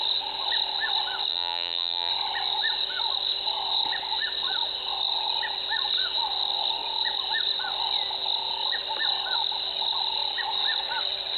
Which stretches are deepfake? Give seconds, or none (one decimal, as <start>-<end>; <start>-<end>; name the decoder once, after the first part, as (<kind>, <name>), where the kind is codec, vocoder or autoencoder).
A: 1.3-2.1 (vocoder, BigVGAN v2)